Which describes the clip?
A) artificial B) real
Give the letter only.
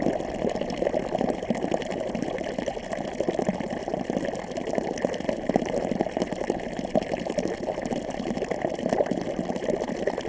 B